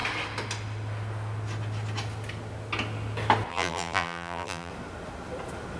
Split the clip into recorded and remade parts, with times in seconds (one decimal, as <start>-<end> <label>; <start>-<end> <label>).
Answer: 0.0-3.5 recorded; 3.5-4.7 remade; 4.7-5.8 recorded